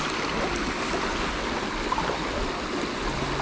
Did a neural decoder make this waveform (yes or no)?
no